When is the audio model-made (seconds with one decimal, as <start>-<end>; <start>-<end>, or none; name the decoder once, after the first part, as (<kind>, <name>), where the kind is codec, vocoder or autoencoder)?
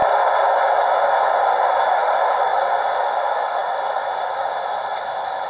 1.7-2.5 (autoencoder, DAC-VAE); 3.0-5.5